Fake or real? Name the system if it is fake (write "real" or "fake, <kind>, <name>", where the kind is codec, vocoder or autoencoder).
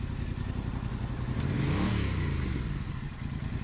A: real